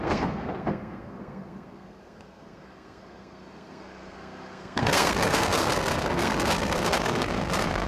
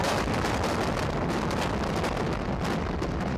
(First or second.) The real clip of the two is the second